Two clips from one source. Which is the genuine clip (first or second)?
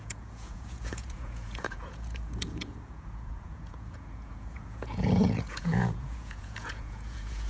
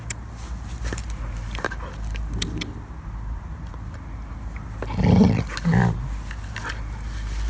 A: second